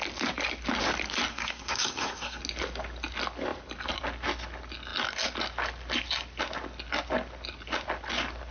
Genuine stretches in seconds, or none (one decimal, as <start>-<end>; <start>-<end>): 0.0-1.3; 2.4-8.5